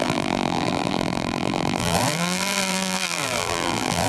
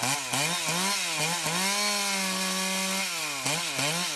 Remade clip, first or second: first